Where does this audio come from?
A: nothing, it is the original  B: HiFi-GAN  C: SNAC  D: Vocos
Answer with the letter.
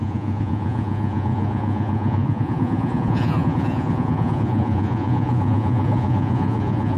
D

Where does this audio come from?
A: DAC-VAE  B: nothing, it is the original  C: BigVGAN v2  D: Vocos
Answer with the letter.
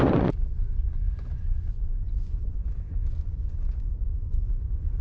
D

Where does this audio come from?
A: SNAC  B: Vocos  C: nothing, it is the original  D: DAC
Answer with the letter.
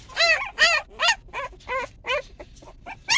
C